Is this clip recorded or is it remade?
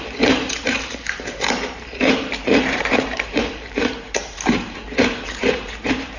remade